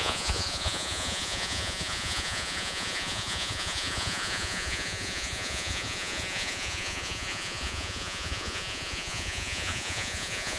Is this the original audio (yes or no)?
no